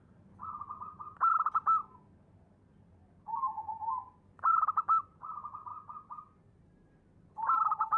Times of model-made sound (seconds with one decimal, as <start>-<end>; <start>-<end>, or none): 0.0-1.8; 4.2-5.7; 6.4-8.0